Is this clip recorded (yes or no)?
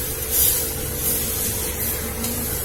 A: yes